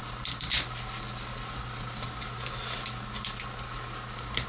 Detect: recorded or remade recorded